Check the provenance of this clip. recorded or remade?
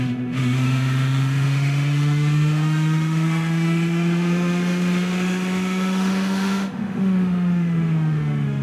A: remade